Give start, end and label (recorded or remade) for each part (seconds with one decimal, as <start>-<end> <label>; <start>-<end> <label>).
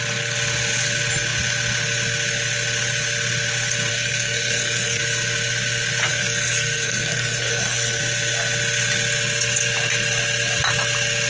0.0-3.9 recorded; 3.9-5.0 remade; 5.0-6.1 recorded; 6.1-8.0 remade; 8.0-11.3 recorded